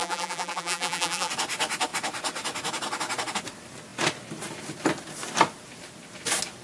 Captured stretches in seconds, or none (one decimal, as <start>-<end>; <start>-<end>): 1.3-6.6